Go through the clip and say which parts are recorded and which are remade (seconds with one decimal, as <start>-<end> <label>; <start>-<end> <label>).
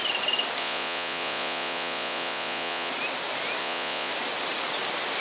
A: 0.0-0.6 recorded; 0.6-2.9 remade; 2.9-3.6 recorded; 3.6-4.1 remade; 4.1-5.2 recorded